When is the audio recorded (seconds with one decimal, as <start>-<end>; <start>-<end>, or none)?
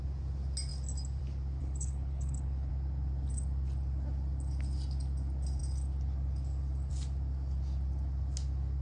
0.0-1.6; 2.7-8.8